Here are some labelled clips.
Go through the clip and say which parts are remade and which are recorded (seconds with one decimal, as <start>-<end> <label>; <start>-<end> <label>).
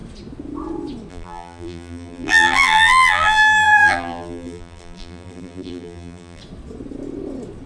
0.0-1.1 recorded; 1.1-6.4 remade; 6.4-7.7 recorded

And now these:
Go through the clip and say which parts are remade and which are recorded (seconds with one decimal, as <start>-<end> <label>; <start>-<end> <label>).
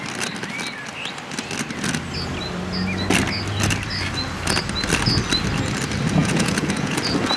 0.0-6.2 recorded; 6.2-7.0 remade; 7.0-7.4 recorded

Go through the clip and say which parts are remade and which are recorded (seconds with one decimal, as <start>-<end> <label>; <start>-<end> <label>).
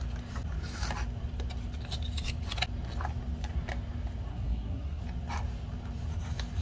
0.0-4.3 recorded; 4.3-5.0 remade; 5.0-6.6 recorded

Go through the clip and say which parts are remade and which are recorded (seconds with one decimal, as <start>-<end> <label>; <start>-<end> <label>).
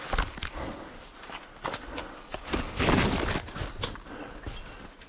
0.0-5.1 recorded